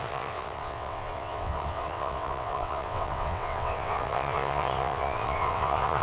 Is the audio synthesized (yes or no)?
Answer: yes